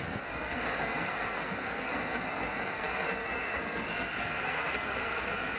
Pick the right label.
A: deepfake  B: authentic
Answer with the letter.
A